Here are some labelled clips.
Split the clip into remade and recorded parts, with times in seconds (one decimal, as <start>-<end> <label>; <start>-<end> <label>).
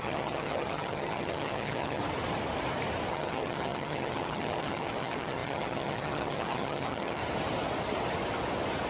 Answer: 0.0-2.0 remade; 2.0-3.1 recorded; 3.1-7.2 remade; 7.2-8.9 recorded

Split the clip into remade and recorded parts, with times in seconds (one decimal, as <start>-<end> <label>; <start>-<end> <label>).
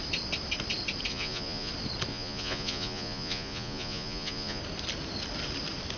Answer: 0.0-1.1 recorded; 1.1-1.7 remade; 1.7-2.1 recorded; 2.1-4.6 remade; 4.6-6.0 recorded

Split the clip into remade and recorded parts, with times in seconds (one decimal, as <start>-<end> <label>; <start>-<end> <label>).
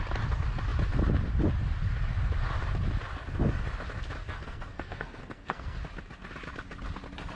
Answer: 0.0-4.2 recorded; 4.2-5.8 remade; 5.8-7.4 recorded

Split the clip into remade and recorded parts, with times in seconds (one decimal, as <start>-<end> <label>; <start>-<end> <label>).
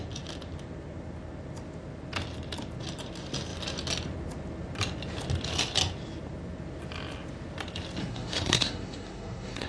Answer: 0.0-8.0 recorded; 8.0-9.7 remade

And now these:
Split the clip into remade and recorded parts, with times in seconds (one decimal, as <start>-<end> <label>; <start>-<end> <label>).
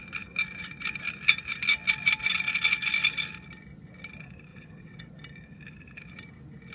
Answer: 0.0-4.5 recorded; 4.5-5.1 remade; 5.1-6.7 recorded